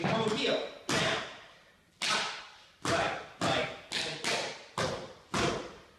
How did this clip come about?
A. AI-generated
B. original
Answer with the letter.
B